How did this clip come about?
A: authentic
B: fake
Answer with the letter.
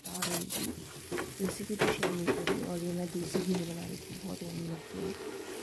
B